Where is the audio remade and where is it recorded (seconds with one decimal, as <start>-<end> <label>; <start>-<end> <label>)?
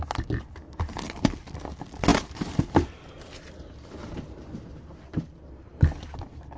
0.0-2.1 recorded; 2.1-4.6 remade; 4.6-6.6 recorded